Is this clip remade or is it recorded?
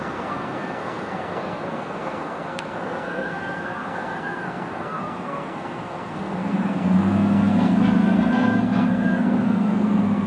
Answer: remade